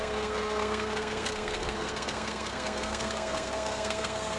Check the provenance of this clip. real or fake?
fake